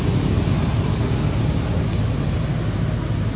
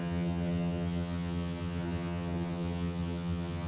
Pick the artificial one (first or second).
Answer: second